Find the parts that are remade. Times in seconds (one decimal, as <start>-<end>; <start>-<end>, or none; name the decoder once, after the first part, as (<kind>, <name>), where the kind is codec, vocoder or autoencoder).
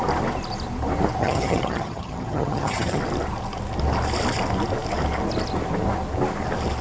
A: 1.2-3.0 (vocoder, HiFi-GAN)